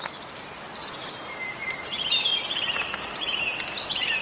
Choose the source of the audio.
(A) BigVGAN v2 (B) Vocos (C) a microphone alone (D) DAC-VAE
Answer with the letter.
C